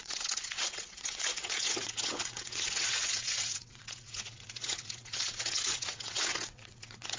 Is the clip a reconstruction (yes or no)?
yes